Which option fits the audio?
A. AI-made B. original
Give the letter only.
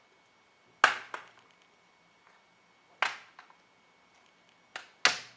B